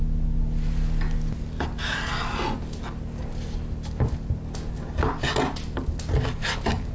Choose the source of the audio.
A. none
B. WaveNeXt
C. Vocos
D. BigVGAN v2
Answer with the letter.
A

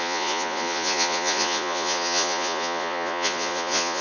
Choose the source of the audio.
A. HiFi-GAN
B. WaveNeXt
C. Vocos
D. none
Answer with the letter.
C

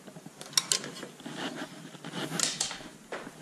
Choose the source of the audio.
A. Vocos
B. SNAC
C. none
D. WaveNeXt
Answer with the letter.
C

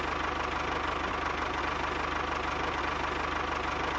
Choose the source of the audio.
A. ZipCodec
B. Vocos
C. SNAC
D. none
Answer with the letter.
D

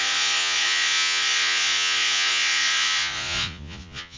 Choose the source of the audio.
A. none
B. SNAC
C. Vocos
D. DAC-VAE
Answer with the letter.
C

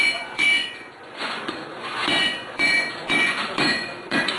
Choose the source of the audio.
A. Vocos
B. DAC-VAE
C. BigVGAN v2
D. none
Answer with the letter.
A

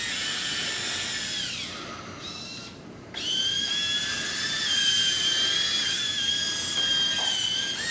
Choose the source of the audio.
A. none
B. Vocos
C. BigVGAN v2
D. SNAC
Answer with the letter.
A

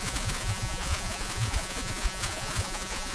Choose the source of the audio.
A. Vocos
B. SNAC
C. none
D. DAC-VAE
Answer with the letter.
A